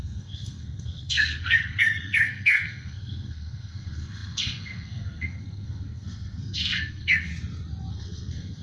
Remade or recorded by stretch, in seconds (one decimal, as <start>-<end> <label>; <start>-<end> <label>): 0.0-7.3 remade; 7.3-7.9 recorded; 7.9-8.6 remade